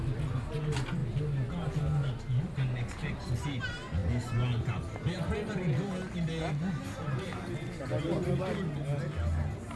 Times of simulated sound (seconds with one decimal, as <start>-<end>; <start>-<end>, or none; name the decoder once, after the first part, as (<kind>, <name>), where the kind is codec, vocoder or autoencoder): none